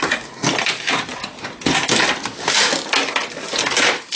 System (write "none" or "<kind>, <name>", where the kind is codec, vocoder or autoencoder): none